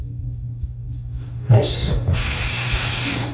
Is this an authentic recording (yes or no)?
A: no